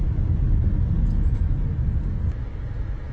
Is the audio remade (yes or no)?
no